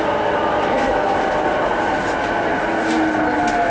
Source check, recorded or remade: recorded